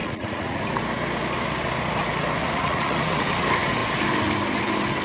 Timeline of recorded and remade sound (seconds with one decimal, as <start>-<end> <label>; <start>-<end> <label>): 0.0-0.6 remade; 0.6-2.4 recorded; 2.4-3.3 remade; 3.3-5.0 recorded